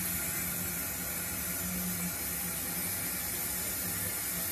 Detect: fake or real real